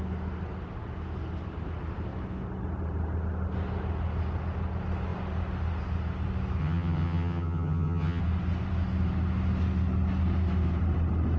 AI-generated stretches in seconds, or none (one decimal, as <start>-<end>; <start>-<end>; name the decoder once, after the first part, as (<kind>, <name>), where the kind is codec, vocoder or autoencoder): 6.6-8.2 (vocoder, HiFi-GAN)

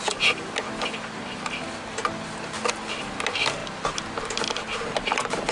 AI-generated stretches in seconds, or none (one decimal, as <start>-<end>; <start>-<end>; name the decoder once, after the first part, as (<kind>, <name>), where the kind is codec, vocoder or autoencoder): none

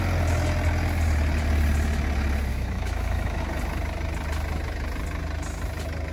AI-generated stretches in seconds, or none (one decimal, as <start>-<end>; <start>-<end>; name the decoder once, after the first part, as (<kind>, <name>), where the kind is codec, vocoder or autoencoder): 2.5-3.4 (autoencoder, DAC-VAE)

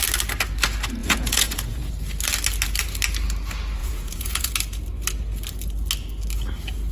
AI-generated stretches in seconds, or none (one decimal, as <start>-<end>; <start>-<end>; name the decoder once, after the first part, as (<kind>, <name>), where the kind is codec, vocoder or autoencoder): 1.0-1.9 (vocoder, Vocos); 3.8-4.5

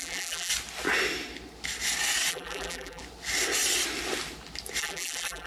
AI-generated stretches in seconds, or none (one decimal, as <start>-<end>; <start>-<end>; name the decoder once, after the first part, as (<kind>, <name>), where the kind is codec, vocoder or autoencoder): 0.0-0.5 (vocoder, BigVGAN v2); 2.3-3.0; 4.8-5.5